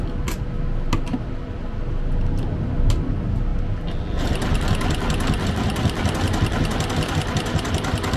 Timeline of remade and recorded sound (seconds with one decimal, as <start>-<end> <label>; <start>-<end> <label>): 0.0-8.2 recorded